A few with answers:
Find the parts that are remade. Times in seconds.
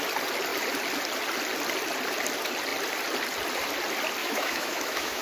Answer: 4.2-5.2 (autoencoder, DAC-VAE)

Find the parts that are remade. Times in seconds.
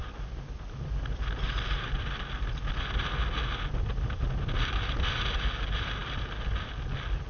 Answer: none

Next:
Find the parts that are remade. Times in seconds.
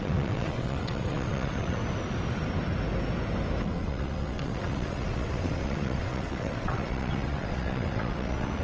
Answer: 0.0-1.8 (vocoder, WaveNeXt); 3.6-8.6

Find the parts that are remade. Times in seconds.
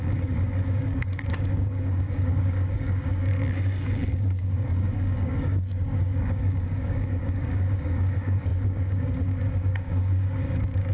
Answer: 0.0-10.9 (codec, DAC)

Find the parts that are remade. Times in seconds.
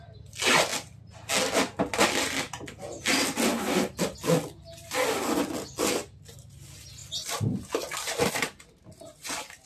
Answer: none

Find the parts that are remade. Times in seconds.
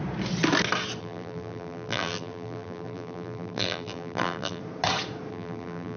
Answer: 1.0-4.6 (vocoder, BigVGAN v2); 5.3-6.0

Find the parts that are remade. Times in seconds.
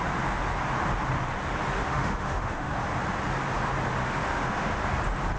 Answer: 1.8-2.7 (autoencoder, DAC-VAE); 4.0-4.8